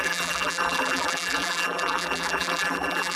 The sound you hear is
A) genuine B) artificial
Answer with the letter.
B